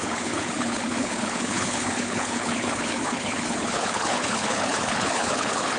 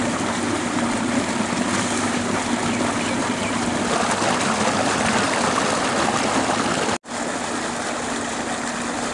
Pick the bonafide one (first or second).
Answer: second